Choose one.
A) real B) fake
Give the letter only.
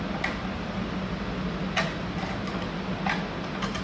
A